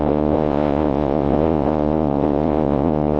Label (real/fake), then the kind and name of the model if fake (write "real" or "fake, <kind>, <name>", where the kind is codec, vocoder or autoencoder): fake, vocoder, Vocos